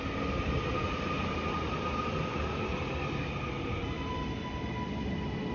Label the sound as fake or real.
real